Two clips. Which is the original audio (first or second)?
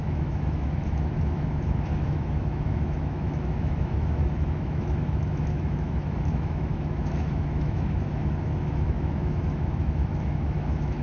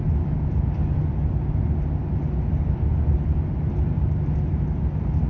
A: second